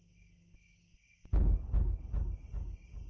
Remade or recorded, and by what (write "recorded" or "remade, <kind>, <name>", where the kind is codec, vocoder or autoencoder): recorded